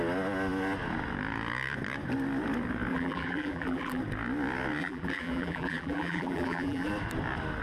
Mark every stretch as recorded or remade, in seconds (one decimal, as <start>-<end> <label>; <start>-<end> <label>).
0.0-2.9 recorded; 2.9-4.0 remade; 4.0-4.8 recorded; 4.8-6.9 remade; 6.9-7.6 recorded